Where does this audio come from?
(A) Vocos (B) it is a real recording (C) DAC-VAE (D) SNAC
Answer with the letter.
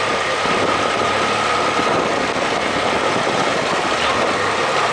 B